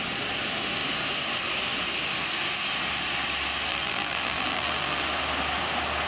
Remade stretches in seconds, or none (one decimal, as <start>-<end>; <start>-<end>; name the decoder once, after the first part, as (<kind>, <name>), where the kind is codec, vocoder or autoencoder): 3.7-5.0 (vocoder, BigVGAN v2)

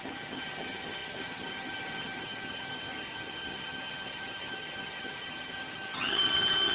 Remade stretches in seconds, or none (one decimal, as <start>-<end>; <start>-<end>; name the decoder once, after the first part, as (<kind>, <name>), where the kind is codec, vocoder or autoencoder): 0.0-6.7 (vocoder, HiFi-GAN)

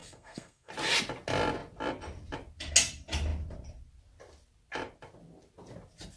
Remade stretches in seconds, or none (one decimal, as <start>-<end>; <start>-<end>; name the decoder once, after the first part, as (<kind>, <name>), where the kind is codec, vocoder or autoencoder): 0.0-0.7 (codec, SNAC)

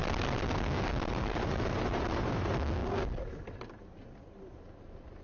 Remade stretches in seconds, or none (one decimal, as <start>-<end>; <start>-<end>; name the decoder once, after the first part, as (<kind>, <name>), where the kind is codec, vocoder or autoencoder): 1.1-2.8 (vocoder, BigVGAN v2); 4.5-5.2

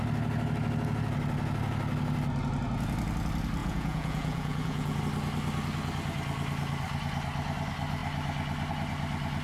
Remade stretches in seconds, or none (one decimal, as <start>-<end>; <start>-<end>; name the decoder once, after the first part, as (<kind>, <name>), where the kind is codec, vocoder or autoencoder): 3.6-5.0 (vocoder, Vocos)

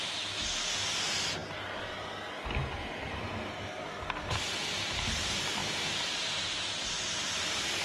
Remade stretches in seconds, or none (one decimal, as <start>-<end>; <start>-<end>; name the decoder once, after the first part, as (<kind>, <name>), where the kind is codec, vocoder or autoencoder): 5.6-6.1 (vocoder, BigVGAN v2)